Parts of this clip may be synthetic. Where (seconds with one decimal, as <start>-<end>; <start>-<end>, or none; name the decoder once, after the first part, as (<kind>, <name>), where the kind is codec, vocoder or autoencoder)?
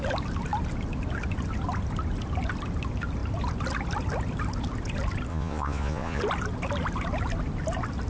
5.3-6.2 (vocoder, Vocos)